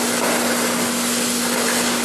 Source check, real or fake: real